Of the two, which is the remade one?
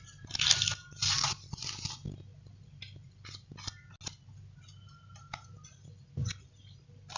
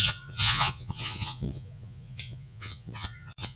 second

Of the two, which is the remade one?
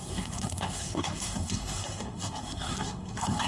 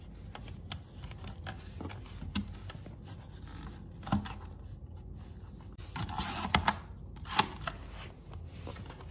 first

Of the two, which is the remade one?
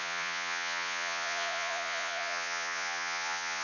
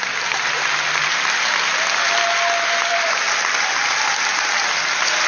first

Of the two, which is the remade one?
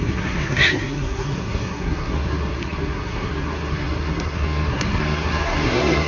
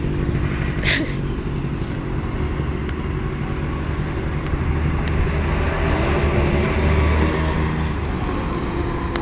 first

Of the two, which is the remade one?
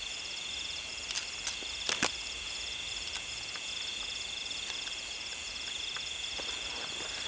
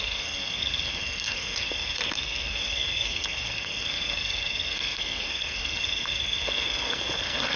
second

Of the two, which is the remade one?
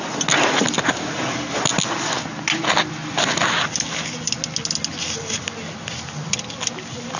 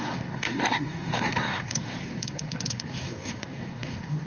second